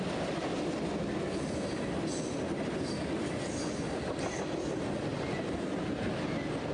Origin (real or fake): real